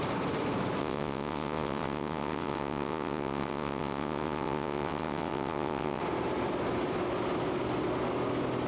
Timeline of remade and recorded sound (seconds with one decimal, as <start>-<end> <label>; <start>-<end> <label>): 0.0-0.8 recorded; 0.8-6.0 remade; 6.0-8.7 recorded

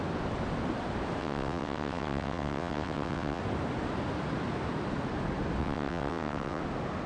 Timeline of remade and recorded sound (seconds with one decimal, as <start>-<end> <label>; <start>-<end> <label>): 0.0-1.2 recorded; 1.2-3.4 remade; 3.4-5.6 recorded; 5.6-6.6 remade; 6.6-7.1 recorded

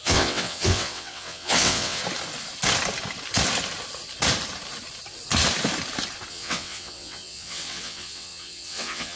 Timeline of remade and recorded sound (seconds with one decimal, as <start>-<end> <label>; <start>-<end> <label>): 0.0-2.0 remade; 2.0-6.3 recorded; 6.3-9.2 remade

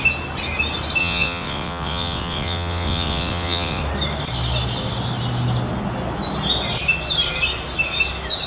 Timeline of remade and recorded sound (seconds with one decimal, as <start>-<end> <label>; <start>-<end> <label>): 0.0-1.0 recorded; 1.0-3.8 remade; 3.8-8.5 recorded